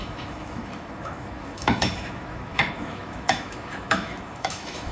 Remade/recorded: remade